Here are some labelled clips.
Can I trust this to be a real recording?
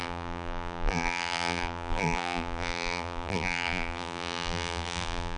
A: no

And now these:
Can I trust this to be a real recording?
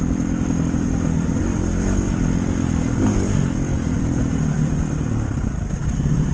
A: no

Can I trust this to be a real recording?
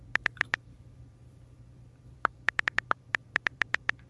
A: no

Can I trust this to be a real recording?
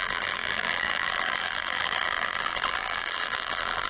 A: no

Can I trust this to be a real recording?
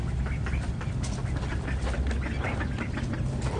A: yes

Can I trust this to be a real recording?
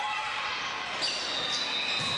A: yes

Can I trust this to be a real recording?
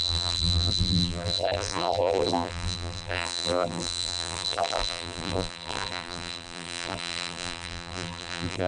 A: no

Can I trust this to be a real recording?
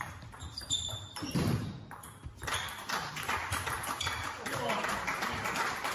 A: no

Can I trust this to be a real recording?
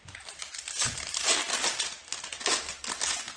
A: yes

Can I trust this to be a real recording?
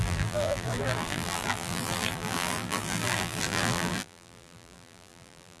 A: no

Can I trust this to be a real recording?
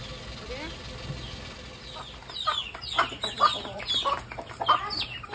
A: yes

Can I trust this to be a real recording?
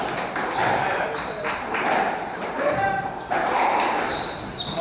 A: no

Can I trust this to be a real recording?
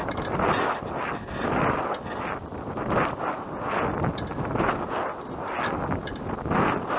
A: yes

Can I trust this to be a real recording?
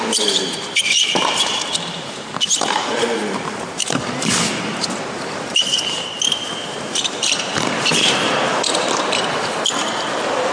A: no